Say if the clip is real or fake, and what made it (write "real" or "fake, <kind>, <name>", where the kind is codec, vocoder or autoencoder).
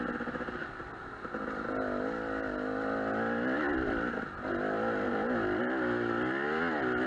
real